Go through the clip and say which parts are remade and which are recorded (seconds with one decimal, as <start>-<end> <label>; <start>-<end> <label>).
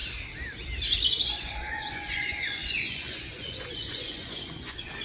0.0-1.2 recorded; 1.2-5.0 remade